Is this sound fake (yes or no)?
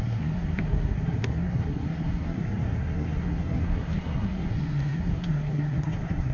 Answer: yes